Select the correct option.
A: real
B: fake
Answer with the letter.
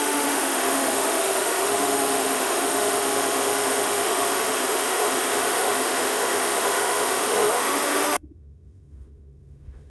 B